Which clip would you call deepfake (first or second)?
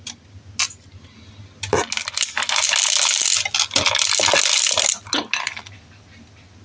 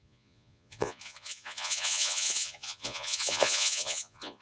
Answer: second